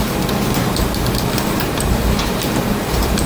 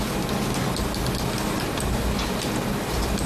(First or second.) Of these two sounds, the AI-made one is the first